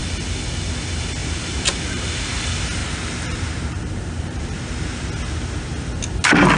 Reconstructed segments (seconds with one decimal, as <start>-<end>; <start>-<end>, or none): 1.2-2.4; 2.8-5.0